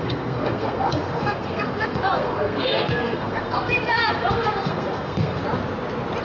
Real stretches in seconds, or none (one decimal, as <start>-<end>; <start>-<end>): 5.4-6.2